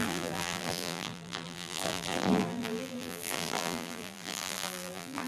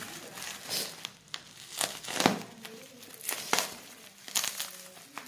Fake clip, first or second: first